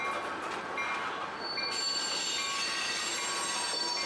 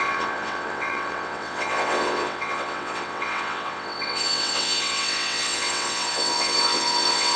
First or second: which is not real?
second